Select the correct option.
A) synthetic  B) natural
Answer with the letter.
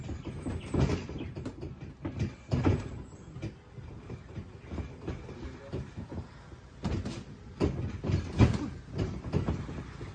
B